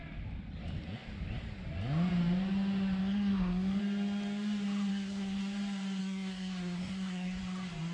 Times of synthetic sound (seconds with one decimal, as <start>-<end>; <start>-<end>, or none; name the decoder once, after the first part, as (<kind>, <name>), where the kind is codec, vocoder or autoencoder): 3.0-3.8 (codec, SNAC); 4.9-5.4; 6.0-7.4